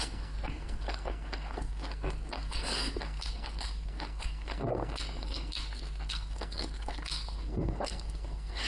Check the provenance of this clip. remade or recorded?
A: remade